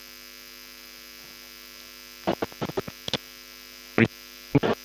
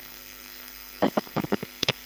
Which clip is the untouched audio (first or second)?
first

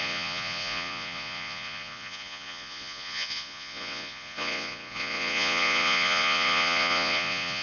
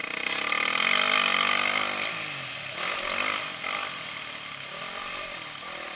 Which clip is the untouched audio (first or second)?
second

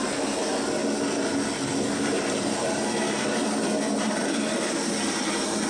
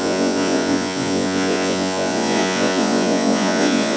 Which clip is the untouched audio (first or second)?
first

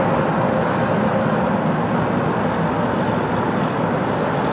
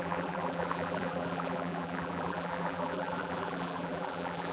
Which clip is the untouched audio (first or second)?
first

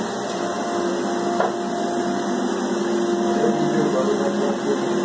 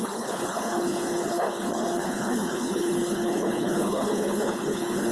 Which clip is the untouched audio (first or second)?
first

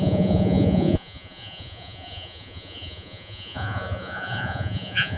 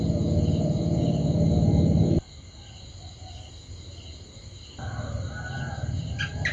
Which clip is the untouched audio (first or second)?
second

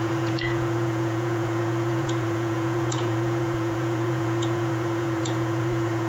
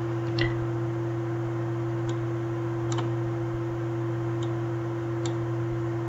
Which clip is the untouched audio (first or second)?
second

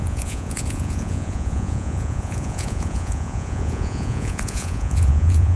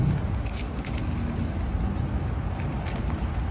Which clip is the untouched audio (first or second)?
second